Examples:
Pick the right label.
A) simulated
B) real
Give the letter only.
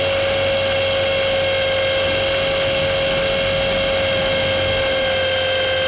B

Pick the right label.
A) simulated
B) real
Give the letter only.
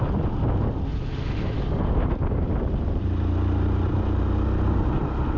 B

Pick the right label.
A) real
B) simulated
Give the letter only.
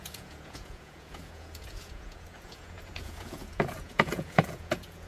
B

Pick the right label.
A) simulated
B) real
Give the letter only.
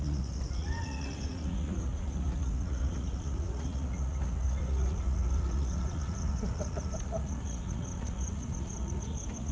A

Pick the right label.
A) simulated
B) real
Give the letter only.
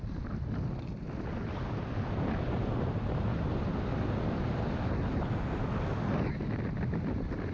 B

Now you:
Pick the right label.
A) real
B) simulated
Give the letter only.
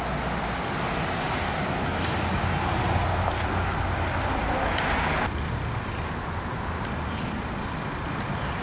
A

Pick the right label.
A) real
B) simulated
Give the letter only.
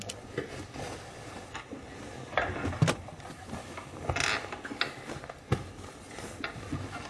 A